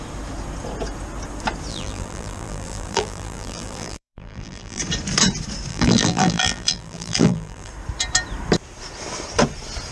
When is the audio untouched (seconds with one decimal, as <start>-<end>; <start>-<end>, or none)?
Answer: 0.0-1.7; 4.8-5.7; 7.7-9.9